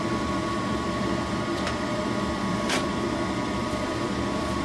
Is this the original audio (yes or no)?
no